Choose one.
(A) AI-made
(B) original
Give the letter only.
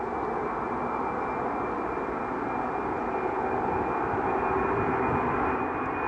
B